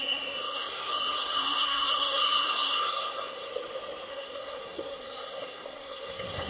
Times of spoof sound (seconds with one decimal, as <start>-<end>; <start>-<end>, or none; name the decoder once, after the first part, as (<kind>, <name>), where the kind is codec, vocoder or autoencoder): 0.0-3.5 (codec, SNAC); 4.1-6.5